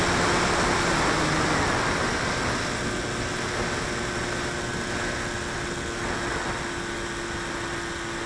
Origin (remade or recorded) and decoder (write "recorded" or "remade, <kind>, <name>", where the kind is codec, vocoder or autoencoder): recorded